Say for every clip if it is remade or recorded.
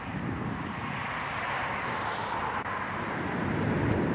recorded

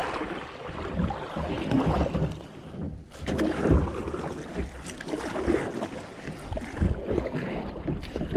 recorded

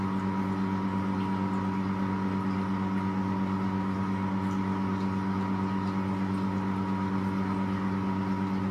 recorded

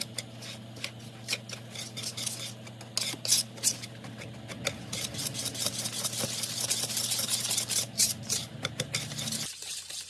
recorded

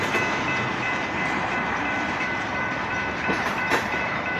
remade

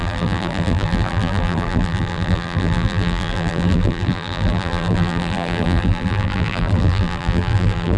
remade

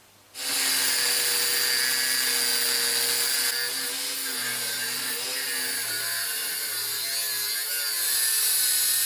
recorded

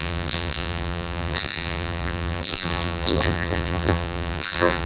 remade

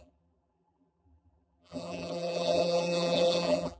remade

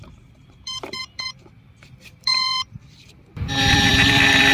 remade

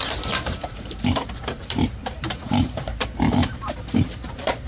remade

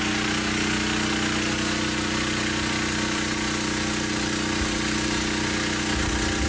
recorded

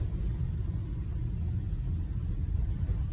recorded